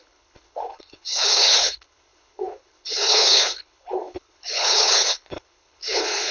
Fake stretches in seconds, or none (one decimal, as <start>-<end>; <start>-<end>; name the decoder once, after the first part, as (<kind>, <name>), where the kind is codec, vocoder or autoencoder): 0.0-6.3 (codec, HILCodec)